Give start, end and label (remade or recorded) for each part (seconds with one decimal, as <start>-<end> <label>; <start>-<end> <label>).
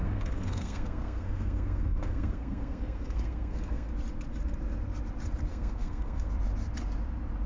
0.0-3.9 remade; 3.9-5.5 recorded; 5.5-6.3 remade; 6.3-7.5 recorded